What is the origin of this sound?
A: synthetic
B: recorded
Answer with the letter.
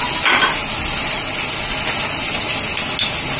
B